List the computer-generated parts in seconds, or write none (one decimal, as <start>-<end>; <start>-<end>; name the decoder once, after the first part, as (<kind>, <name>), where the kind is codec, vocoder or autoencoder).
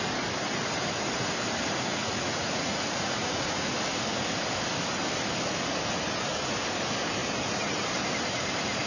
1.9-3.7 (vocoder, Vocos)